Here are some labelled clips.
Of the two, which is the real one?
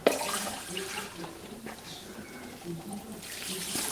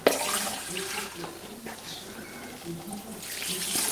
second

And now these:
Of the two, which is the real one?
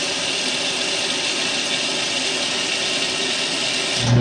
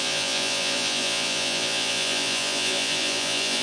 first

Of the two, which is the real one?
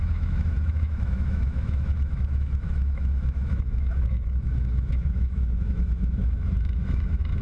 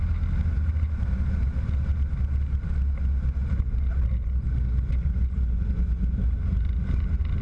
second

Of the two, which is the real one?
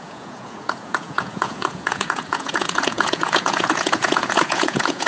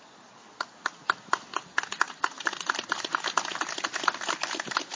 second